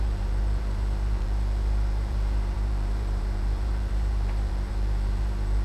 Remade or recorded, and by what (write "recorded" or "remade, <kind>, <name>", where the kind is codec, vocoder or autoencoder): remade, vocoder, BigVGAN v2